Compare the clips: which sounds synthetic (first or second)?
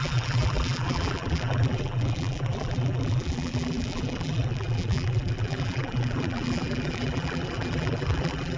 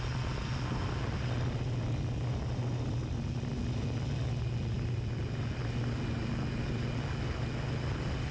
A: first